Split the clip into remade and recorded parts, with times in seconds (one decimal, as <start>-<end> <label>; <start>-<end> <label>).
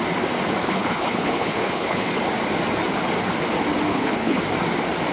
0.0-0.6 recorded; 0.6-2.1 remade; 2.1-3.9 recorded; 3.9-4.4 remade; 4.4-5.1 recorded